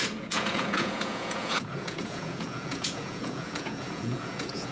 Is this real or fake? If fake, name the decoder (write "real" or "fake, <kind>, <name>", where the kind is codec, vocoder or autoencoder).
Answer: fake, vocoder, Vocos